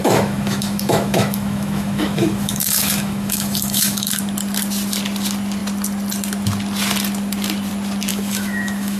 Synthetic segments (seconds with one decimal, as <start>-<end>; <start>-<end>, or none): 0.0-4.2; 8.1-9.0